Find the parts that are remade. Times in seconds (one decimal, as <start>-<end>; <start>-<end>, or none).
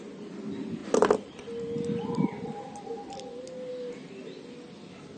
none